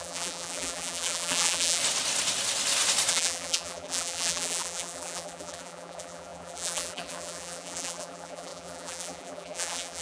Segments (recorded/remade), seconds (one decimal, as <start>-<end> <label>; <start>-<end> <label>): 0.0-1.8 remade; 1.8-3.1 recorded; 3.1-10.0 remade